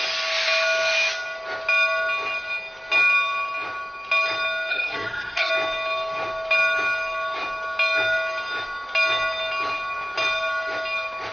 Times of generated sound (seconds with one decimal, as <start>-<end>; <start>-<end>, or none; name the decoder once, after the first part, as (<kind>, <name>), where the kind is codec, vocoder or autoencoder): 4.7-5.5 (codec, SNAC)